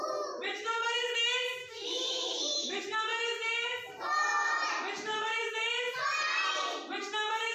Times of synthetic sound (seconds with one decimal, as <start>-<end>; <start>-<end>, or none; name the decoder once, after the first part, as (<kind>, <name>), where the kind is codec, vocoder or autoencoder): 1.6-2.8 (autoencoder, DAC-VAE)